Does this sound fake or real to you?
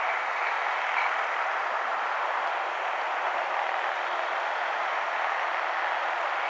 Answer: real